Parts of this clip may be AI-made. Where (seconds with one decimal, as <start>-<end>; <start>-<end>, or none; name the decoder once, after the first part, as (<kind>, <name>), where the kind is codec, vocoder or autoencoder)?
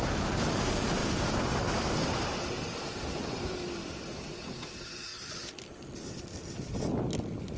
4.1-4.6 (vocoder, Vocos)